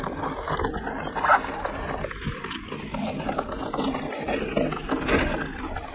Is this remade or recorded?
recorded